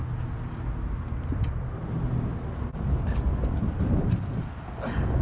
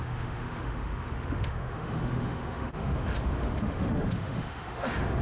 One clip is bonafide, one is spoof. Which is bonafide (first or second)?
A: first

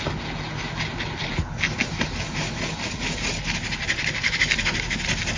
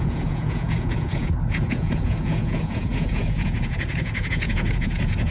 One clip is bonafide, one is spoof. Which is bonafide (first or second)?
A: first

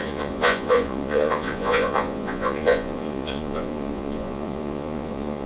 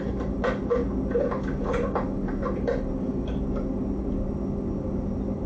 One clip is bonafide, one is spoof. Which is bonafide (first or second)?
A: second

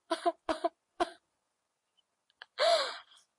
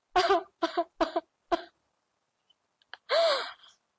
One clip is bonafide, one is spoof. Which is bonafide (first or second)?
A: second